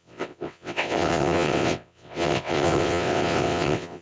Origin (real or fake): fake